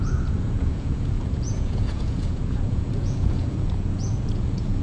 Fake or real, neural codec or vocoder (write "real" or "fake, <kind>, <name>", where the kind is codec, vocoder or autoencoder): fake, vocoder, Vocos